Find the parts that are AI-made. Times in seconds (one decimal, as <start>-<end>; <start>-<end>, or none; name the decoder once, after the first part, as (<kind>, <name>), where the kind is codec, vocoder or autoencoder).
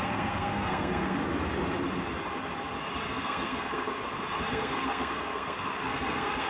0.0-1.2 (codec, SNAC); 3.1-3.9; 4.5-6.5